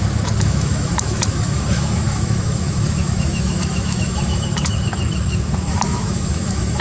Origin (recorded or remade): remade